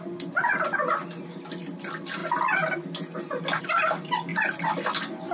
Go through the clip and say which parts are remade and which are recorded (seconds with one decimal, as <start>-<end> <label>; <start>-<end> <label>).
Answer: 0.0-5.3 recorded